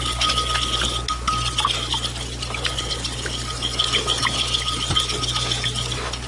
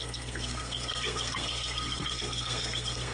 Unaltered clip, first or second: first